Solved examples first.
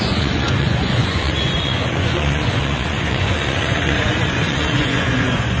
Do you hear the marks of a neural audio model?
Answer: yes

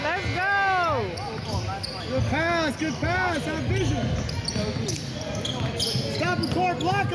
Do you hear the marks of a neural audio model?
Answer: no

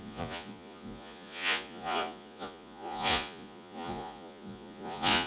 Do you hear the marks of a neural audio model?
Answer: yes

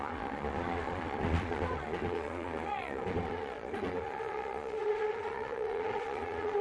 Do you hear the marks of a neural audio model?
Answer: yes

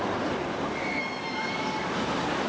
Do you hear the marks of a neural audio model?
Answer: no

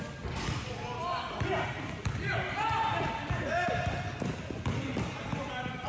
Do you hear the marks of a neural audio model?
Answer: no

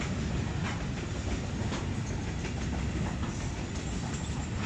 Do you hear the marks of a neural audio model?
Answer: no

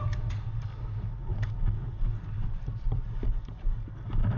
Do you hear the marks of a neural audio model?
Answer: no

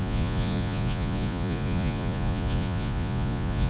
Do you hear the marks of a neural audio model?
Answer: yes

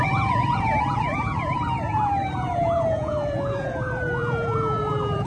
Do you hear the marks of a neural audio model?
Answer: yes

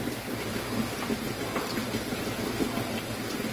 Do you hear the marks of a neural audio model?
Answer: no